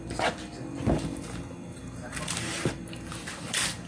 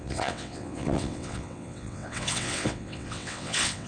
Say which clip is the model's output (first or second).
second